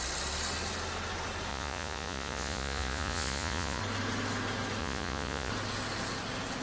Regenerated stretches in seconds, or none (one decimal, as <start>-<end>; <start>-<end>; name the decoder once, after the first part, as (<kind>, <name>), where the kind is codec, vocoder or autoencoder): 1.5-3.8 (vocoder, Vocos); 4.8-5.5